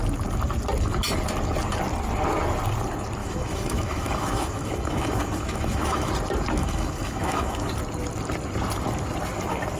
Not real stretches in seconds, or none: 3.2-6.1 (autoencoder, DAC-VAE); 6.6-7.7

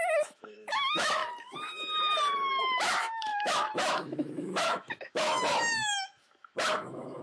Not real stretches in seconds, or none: 0.0-1.2 (autoencoder, DAC-VAE); 2.5-7.2

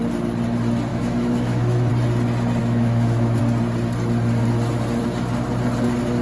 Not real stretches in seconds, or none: 0.9-1.9 (autoencoder, DAC-VAE); 2.6-3.4

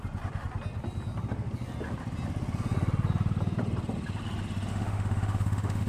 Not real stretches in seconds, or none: 4.7-5.9 (autoencoder, DAC-VAE)

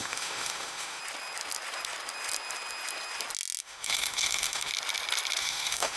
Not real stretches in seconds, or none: 0.0-1.0 (autoencoder, DAC-VAE); 3.6-4.7; 5.4-6.0